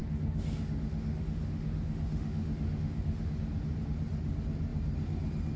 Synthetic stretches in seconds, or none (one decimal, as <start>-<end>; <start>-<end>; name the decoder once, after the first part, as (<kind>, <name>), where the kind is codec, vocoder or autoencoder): 0.0-3.4 (autoencoder, DAC-VAE)